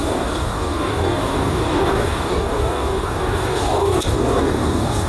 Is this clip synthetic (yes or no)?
yes